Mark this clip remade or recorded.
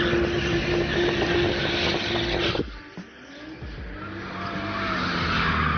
recorded